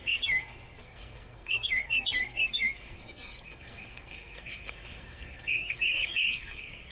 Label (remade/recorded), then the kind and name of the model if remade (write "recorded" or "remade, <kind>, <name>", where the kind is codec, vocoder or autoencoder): remade, codec, SNAC